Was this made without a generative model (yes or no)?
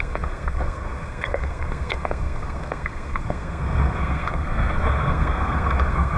no